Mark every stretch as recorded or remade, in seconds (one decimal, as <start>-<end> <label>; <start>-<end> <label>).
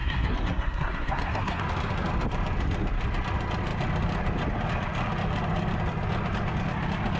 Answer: 0.0-1.6 remade; 1.6-7.2 recorded